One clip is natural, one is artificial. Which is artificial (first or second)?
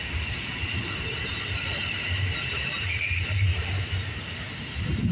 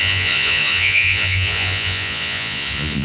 second